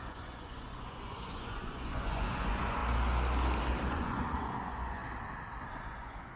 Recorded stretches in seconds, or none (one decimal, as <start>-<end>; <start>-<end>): 2.8-3.9; 5.0-5.7